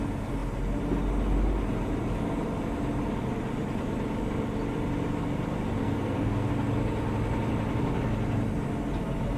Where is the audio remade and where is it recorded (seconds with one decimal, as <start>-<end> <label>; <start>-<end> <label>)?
0.0-5.8 recorded; 5.8-6.5 remade; 6.5-9.4 recorded